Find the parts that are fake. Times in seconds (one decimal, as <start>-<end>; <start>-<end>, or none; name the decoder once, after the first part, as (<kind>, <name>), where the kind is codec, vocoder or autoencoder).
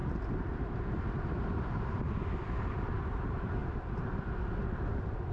none